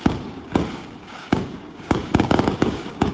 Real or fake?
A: fake